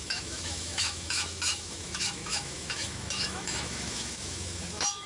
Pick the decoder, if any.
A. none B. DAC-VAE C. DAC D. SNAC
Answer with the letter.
B